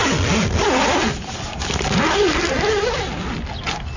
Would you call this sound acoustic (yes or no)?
yes